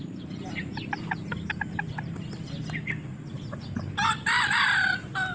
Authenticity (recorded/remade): recorded